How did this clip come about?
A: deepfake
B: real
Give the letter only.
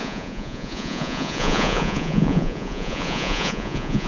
A